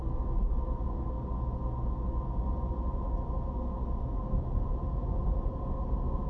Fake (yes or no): no